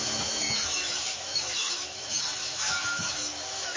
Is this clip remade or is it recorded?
remade